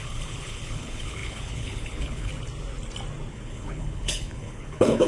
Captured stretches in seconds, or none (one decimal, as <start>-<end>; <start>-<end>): 2.3-3.3